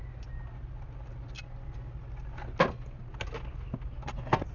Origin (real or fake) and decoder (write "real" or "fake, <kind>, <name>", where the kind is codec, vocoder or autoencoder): real